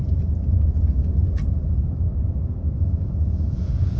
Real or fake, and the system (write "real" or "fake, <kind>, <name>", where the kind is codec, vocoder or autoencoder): fake, vocoder, Vocos